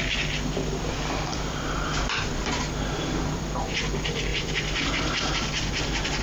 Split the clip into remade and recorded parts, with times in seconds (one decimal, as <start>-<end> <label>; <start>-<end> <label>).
0.0-1.3 recorded; 1.3-2.5 remade; 2.5-4.3 recorded; 4.3-6.2 remade